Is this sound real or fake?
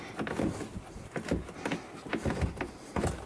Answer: real